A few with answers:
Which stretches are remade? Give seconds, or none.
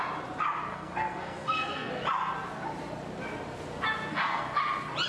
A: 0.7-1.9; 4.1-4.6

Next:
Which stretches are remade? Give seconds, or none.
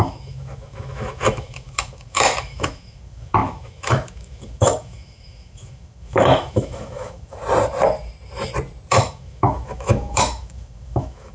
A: 0.0-7.4; 8.9-11.3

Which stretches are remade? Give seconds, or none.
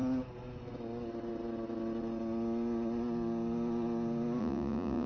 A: 4.4-5.1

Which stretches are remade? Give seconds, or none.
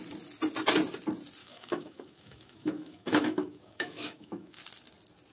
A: 1.4-4.6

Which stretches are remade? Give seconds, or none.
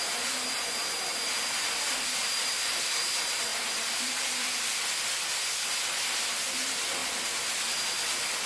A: 1.1-3.0; 3.5-5.4; 7.0-7.8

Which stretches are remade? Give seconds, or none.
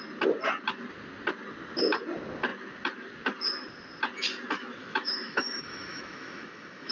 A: 4.8-6.9